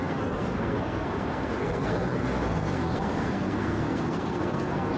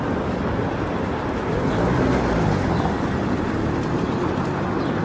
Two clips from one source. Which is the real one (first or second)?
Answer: second